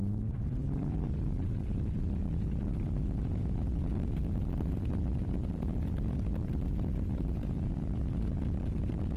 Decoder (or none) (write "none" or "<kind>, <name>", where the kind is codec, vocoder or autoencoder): vocoder, BigVGAN v2